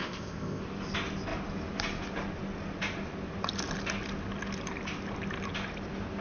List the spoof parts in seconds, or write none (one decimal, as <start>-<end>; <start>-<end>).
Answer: 0.0-0.6